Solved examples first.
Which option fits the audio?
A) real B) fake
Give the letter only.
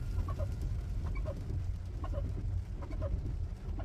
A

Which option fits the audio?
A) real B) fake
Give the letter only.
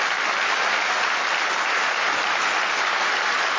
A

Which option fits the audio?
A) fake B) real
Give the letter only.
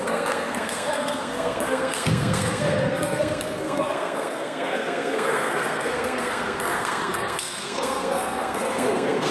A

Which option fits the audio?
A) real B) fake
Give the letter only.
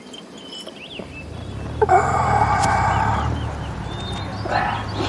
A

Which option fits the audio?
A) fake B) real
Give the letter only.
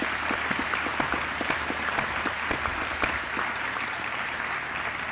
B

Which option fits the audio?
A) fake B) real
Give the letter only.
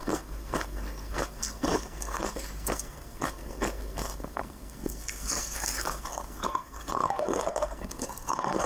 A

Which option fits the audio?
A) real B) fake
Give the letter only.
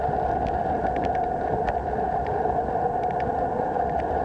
A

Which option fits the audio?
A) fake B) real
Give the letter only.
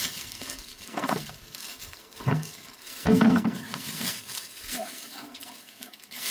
A